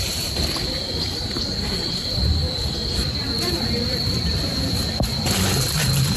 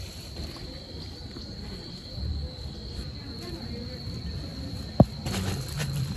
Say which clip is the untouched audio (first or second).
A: second